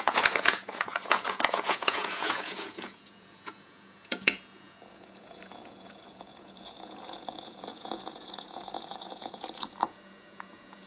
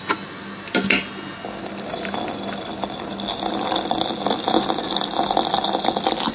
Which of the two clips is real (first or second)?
second